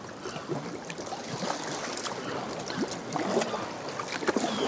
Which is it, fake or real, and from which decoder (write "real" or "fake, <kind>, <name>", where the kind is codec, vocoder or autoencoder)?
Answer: real